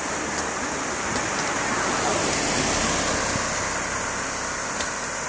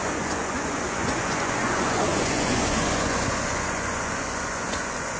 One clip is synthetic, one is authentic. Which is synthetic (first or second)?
second